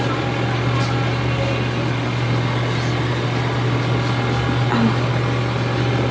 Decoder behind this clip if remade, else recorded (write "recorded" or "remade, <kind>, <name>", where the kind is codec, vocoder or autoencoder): recorded